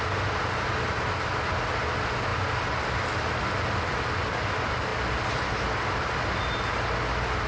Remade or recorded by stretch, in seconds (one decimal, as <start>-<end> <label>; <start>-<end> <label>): 0.0-7.5 recorded